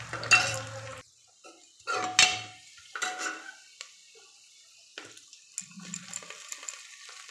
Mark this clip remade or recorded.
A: recorded